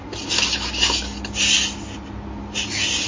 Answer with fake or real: real